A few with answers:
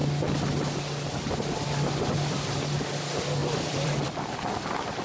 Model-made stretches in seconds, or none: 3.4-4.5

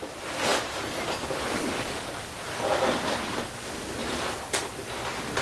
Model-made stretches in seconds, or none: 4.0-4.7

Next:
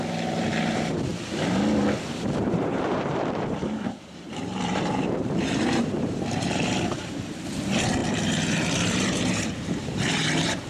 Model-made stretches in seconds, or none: 0.0-1.1; 2.0-10.7